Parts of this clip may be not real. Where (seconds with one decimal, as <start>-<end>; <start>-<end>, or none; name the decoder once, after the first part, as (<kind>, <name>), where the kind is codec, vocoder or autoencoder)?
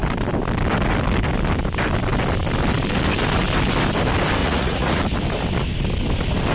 4.4-5.0 (vocoder, Vocos)